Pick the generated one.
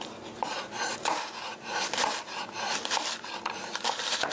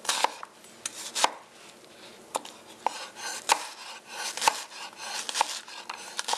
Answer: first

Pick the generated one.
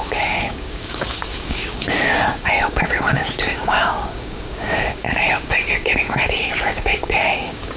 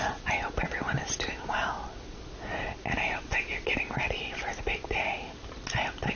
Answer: first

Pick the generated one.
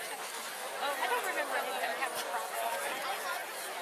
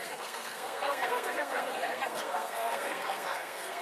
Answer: second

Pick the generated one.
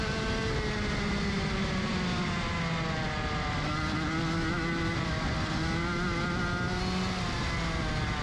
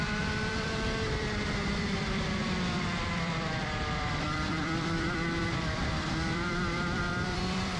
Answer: second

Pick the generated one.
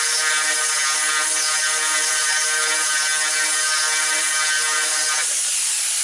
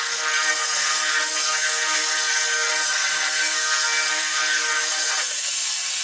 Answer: second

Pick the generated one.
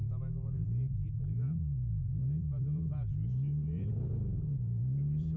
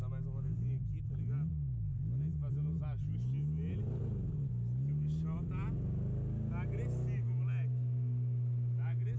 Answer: first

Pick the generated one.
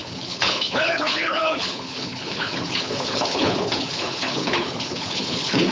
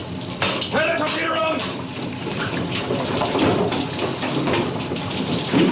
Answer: first